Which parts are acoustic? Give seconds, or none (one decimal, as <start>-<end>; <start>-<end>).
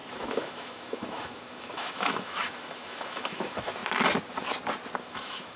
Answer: 3.8-5.0